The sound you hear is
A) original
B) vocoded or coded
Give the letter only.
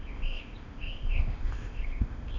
B